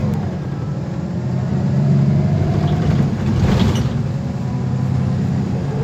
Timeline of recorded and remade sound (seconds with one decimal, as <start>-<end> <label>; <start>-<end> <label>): 0.0-0.7 remade; 0.7-1.5 recorded; 1.5-3.9 remade; 3.9-5.8 recorded